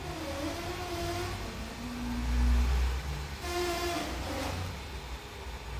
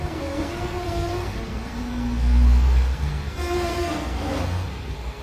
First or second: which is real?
first